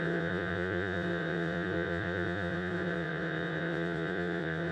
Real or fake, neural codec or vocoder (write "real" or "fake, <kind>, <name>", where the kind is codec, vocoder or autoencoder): fake, vocoder, Vocos